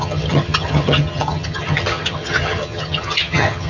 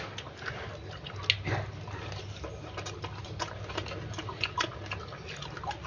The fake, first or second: first